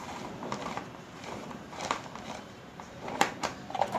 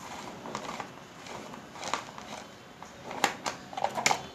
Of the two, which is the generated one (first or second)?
first